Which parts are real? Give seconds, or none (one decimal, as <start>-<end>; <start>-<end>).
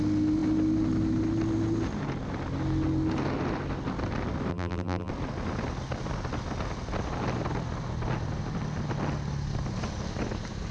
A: 0.0-4.5; 5.1-10.7